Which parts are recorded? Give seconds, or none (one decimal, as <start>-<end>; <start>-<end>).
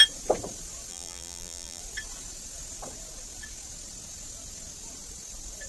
0.0-0.9; 1.8-5.7